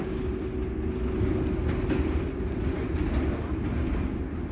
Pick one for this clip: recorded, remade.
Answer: recorded